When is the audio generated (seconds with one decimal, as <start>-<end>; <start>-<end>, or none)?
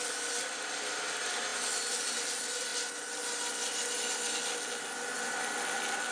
none